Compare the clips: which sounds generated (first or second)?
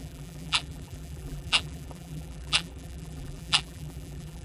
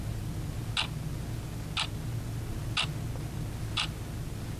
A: first